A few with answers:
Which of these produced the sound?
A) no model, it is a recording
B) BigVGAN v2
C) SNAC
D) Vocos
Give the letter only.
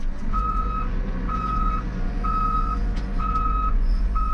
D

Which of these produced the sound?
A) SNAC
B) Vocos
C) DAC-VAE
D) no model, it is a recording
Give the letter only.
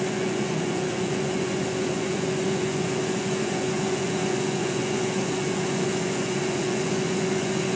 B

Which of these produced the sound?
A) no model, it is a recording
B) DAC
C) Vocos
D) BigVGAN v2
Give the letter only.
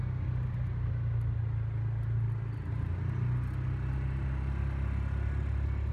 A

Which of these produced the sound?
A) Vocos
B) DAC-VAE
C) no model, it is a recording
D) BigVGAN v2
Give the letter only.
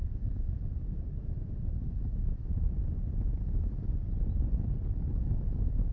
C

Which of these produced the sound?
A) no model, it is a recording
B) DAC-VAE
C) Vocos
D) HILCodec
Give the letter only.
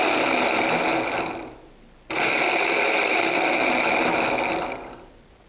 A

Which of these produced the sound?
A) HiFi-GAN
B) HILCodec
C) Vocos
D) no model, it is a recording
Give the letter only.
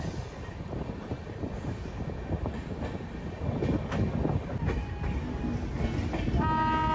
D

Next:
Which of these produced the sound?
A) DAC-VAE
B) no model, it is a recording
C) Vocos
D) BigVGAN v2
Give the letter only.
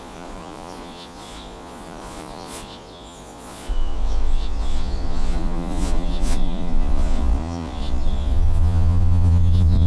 C